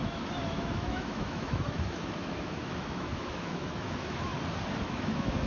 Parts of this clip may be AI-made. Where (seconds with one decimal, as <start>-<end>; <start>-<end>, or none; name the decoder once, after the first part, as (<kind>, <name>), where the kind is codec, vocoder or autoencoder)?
0.0-4.3 (autoencoder, DAC-VAE); 4.8-5.5